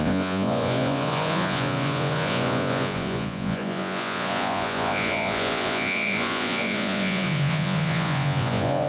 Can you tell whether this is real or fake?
fake